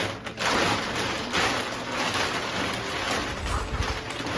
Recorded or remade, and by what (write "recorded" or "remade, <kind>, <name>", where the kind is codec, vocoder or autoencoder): recorded